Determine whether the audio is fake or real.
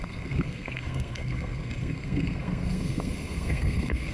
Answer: fake